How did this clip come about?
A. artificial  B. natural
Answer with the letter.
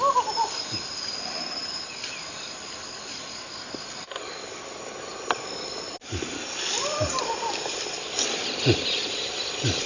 B